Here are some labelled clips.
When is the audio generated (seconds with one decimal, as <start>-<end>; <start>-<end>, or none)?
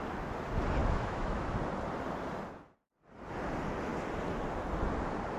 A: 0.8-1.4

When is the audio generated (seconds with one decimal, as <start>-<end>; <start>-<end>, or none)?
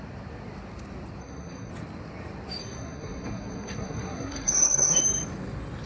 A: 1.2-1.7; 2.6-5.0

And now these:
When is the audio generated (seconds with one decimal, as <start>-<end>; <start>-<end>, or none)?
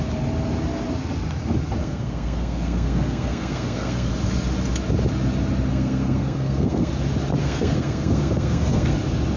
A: 1.8-4.1; 5.7-6.9; 7.4-8.9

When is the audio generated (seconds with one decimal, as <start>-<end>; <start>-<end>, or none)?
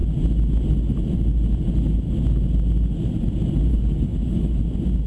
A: 3.7-4.6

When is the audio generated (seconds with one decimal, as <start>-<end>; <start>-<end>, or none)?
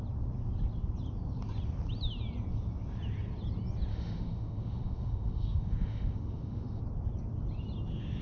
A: 3.9-6.8